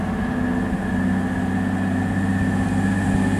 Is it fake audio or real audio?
real